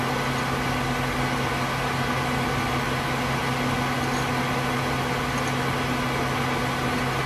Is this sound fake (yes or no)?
no